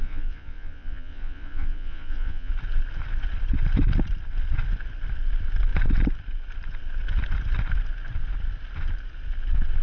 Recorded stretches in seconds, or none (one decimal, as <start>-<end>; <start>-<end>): 2.5-9.8